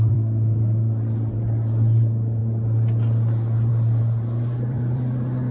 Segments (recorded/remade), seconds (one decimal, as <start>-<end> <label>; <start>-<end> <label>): 0.0-2.4 remade; 2.4-3.7 recorded; 3.7-5.5 remade